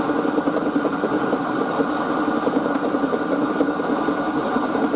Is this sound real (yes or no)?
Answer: no